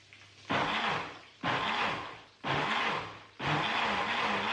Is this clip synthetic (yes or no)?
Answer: no